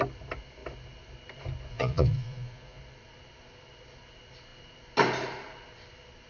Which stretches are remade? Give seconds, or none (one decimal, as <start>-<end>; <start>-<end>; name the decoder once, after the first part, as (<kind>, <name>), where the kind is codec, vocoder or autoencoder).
1.7-2.8 (vocoder, Vocos)